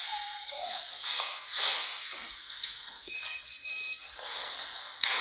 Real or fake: fake